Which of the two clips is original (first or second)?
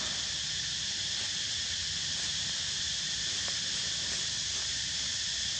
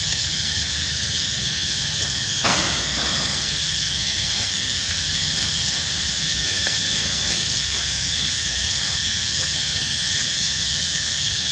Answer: first